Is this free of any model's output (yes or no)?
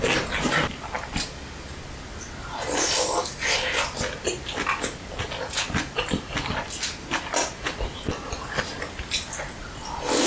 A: yes